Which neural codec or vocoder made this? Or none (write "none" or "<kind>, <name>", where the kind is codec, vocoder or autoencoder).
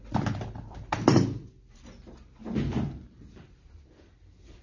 vocoder, BigVGAN v2